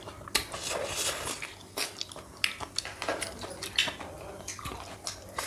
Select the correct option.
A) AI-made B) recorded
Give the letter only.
B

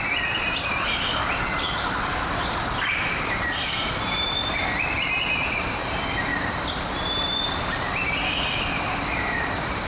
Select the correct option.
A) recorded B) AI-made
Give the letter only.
B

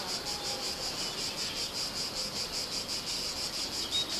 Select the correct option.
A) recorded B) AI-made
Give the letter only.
A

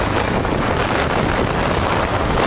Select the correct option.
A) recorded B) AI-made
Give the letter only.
A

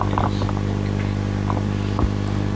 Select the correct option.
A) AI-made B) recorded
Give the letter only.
B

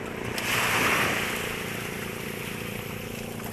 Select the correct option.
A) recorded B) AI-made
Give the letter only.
A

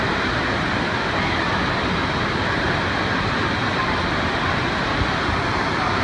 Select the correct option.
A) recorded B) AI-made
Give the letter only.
A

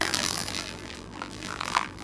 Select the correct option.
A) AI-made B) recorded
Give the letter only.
A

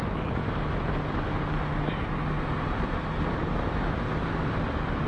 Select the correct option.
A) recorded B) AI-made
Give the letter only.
A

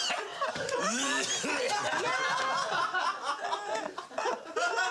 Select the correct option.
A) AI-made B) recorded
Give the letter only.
B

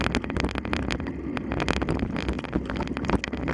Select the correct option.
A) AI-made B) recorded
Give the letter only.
B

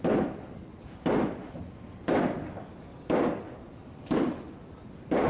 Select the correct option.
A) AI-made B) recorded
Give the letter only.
B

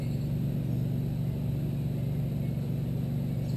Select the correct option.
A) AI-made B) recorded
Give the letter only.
B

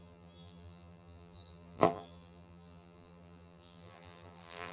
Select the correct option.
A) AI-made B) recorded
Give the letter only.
A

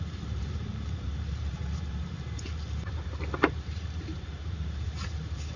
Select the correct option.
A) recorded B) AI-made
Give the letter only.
B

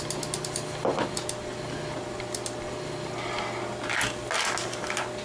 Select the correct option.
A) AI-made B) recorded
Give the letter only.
B